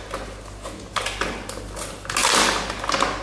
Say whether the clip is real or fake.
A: real